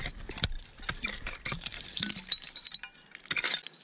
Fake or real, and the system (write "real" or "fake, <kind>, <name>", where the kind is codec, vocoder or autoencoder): real